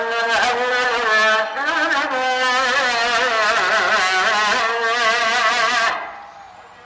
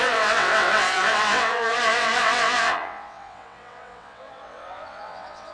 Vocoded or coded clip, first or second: second